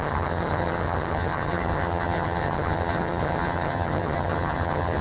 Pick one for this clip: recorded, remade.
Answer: remade